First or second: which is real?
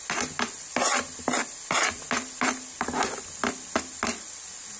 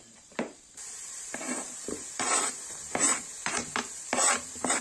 first